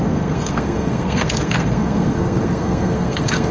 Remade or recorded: remade